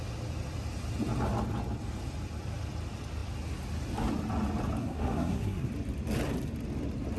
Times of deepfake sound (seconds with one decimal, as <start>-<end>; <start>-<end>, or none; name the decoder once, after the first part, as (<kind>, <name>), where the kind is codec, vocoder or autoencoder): 4.8-5.7 (codec, SNAC)